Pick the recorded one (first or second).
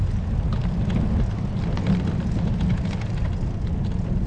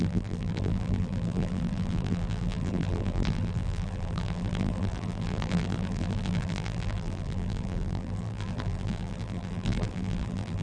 first